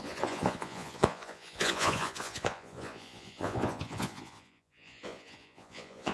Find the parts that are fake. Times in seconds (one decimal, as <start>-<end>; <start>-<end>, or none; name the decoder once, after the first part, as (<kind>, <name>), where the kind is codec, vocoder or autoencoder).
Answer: 0.0-6.1 (vocoder, Vocos)